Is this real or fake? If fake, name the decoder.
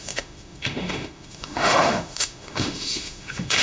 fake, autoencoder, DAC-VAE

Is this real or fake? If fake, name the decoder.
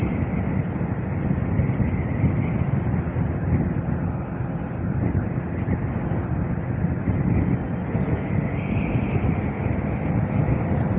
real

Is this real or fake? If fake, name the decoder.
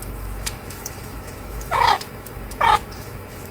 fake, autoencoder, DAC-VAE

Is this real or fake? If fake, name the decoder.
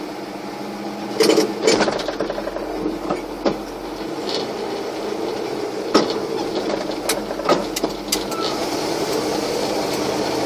real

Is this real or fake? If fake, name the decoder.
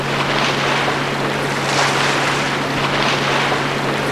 real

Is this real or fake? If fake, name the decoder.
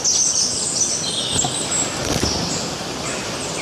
real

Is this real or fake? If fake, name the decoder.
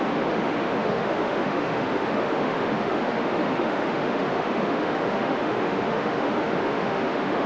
fake, autoencoder, DAC-VAE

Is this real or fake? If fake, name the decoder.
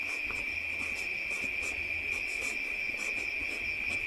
real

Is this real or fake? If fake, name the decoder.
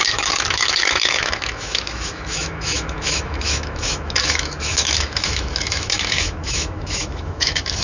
fake, autoencoder, DAC-VAE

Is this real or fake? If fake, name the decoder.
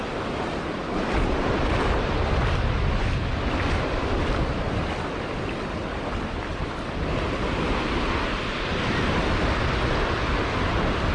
real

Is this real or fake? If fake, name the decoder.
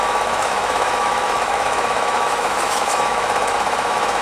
fake, autoencoder, DAC-VAE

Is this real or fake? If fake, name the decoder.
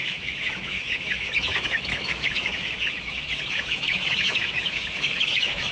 fake, autoencoder, DAC-VAE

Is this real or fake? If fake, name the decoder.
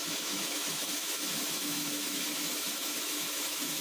fake, autoencoder, DAC-VAE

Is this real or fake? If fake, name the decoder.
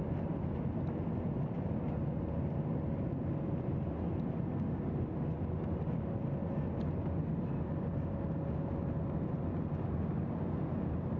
real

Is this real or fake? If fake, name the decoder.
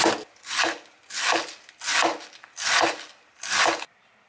real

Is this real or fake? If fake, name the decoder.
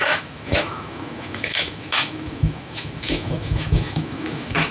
fake, autoencoder, DAC-VAE